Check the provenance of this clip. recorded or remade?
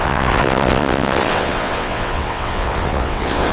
remade